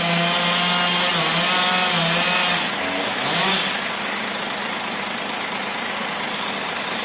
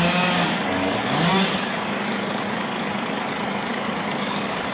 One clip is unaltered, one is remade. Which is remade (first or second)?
second